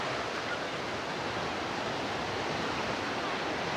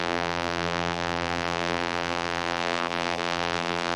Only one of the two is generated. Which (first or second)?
second